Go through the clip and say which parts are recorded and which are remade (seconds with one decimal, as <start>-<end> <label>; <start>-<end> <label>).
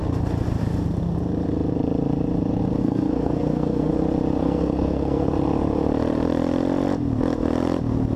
0.0-2.8 recorded; 2.8-3.9 remade; 3.9-4.4 recorded; 4.4-5.3 remade; 5.3-8.2 recorded